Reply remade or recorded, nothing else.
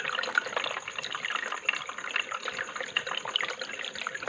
recorded